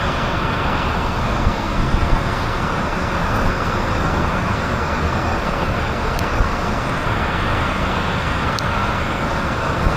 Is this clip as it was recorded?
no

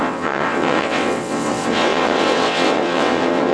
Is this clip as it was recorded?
no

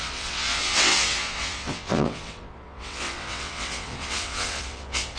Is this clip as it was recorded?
no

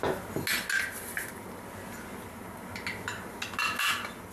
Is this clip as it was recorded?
yes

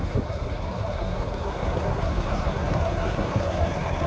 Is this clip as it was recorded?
no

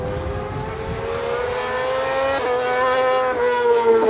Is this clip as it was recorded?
yes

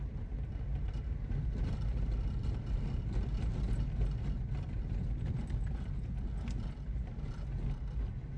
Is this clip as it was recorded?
yes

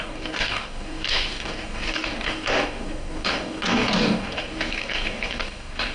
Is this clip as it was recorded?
no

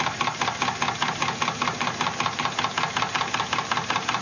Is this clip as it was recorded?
yes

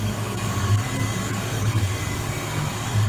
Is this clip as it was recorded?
no